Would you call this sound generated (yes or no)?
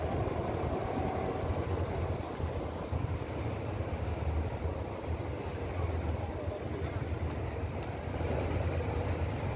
no